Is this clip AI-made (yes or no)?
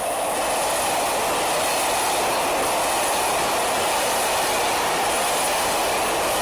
no